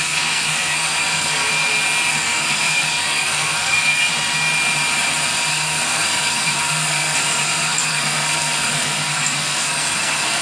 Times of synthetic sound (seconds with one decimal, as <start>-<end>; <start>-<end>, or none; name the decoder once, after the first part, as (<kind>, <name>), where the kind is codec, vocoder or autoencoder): 0.0-1.5 (codec, SNAC); 2.1-4.1; 5.5-10.4